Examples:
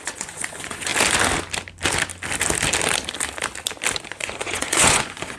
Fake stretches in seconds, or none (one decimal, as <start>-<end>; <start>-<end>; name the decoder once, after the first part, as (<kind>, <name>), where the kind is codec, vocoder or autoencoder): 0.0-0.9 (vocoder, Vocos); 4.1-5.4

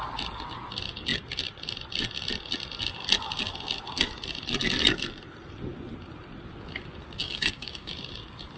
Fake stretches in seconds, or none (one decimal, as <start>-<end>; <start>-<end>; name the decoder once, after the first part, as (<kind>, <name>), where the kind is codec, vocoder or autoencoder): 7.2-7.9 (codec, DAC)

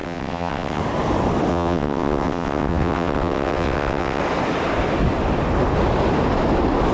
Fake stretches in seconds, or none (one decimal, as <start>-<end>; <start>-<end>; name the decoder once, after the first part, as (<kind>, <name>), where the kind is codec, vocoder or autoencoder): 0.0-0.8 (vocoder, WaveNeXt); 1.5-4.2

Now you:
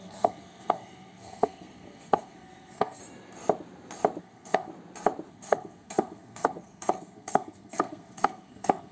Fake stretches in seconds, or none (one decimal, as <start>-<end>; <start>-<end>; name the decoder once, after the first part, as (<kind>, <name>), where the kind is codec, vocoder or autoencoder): 0.0-3.0 (codec, SNAC); 4.2-4.7; 5.3-8.9